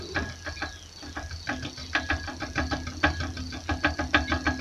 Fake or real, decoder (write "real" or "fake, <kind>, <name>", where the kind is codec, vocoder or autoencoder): real